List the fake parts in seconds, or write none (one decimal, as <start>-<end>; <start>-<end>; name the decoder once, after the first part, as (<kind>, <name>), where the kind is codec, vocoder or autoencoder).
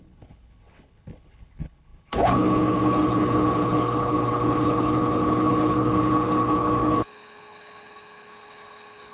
0.0-9.1 (codec, HILCodec)